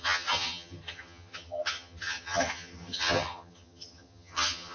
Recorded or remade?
remade